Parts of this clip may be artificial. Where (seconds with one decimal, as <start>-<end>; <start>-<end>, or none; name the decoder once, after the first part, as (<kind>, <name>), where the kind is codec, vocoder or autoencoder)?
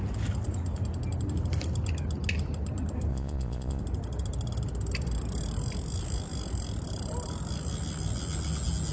3.1-3.8 (vocoder, Vocos)